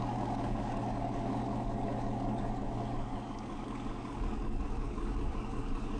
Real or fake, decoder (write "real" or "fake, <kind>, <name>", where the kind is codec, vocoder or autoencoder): fake, codec, DAC